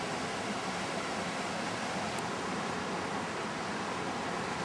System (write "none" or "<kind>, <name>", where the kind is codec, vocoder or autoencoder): none